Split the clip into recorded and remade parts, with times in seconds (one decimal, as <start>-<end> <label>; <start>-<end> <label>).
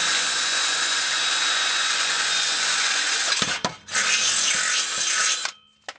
0.0-3.2 remade; 3.2-6.0 recorded